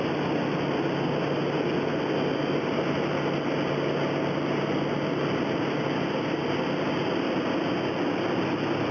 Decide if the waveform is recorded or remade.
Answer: recorded